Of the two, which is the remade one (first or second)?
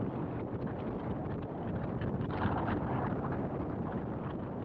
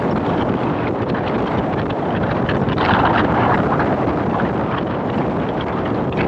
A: second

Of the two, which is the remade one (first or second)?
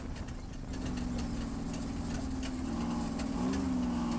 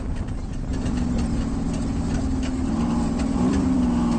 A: second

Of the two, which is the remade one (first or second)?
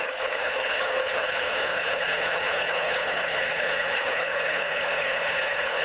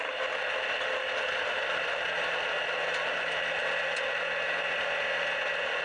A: first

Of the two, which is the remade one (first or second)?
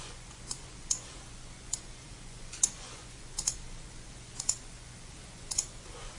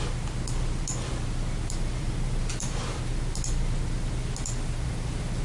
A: first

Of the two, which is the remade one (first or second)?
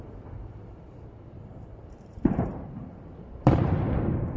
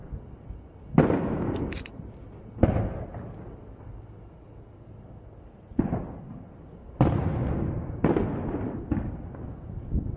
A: first